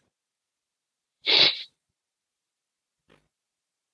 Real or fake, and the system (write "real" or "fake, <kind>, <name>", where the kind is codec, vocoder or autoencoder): fake, vocoder, BigVGAN v2